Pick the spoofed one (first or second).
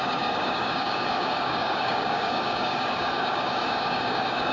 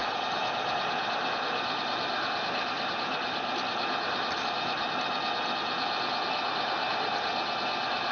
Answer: first